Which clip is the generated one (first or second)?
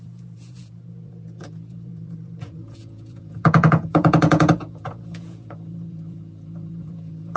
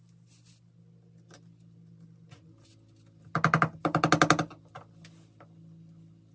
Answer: first